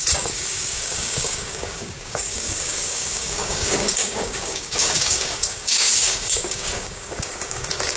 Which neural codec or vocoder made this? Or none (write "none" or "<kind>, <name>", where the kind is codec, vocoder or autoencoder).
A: codec, DAC